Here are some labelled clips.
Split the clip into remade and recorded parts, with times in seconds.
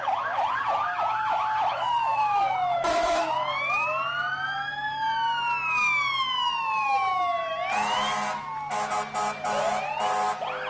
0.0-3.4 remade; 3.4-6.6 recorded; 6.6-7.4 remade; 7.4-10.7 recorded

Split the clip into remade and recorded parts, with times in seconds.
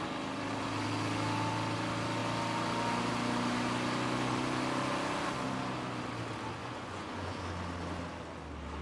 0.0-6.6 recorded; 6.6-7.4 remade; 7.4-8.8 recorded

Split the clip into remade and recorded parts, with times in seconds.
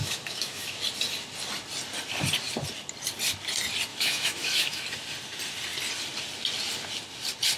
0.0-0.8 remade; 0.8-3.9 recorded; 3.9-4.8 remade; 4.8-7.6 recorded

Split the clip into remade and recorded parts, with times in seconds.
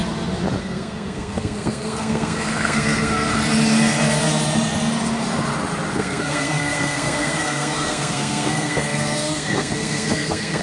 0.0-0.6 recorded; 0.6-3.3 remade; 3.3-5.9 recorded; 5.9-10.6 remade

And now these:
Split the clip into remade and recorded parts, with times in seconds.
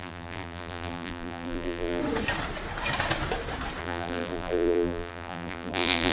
0.0-2.0 remade; 2.0-3.8 recorded; 3.8-6.1 remade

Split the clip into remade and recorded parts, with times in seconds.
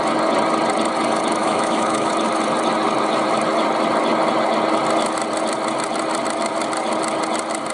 0.0-1.4 recorded; 1.4-2.1 remade; 2.1-7.7 recorded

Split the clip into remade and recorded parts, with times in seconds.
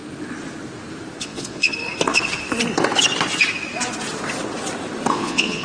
0.0-1.2 recorded; 1.2-1.7 remade; 1.7-5.1 recorded; 5.1-5.6 remade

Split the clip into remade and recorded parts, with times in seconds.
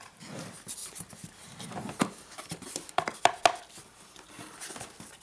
0.0-0.8 recorded; 0.8-3.2 remade; 3.2-5.2 recorded